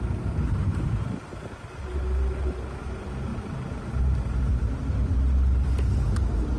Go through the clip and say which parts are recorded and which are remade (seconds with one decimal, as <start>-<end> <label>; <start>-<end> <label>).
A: 0.0-6.6 recorded